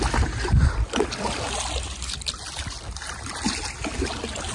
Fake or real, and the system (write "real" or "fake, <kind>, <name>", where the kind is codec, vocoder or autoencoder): real